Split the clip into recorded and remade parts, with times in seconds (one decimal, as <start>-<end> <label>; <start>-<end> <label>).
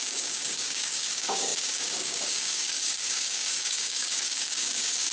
0.0-5.1 remade